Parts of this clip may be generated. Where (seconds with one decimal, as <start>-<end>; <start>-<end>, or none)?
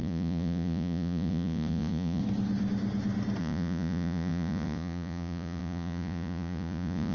0.0-2.2; 3.4-7.1